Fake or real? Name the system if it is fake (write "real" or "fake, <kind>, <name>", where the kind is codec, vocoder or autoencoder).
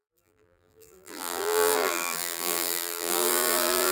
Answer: fake, vocoder, BigVGAN v2